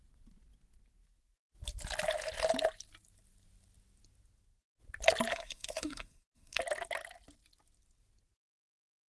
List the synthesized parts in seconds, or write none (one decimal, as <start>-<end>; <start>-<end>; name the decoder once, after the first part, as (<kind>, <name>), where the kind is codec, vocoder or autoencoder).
5.3-6.6 (codec, SNAC)